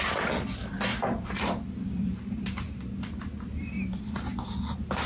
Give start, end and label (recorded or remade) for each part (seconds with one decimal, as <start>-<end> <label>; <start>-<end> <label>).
0.0-0.9 recorded; 0.9-4.0 remade; 4.0-5.1 recorded